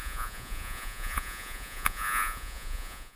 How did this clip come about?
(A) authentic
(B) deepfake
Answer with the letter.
B